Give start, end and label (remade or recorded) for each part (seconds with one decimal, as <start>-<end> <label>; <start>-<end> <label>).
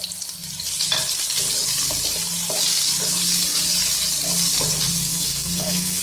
0.0-5.1 recorded; 5.1-6.0 remade